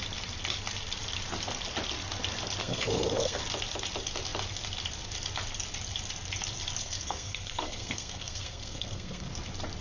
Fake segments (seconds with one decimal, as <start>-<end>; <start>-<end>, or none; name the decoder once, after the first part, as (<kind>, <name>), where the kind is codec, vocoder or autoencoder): 2.6-3.4 (codec, SNAC); 6.8-9.3